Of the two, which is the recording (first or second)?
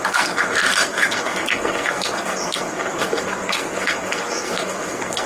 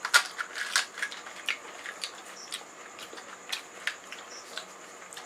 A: second